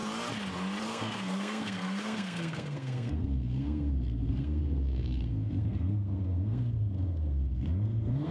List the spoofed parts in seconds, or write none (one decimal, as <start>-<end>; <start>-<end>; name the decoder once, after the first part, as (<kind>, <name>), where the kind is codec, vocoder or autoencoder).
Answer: 0.8-8.3 (codec, SNAC)